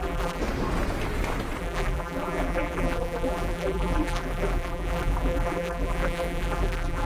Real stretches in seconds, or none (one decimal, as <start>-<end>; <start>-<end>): 0.4-1.6